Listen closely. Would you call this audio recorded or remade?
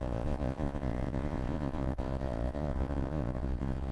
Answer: remade